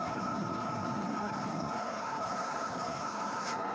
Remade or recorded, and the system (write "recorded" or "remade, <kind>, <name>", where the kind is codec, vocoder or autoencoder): remade, codec, SNAC